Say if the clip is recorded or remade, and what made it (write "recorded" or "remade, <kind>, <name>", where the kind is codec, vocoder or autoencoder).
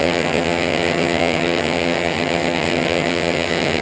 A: remade, vocoder, HiFi-GAN